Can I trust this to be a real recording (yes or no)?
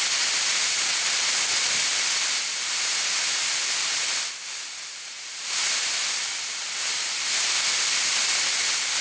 yes